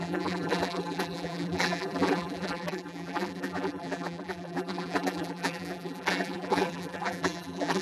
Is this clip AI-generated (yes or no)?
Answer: yes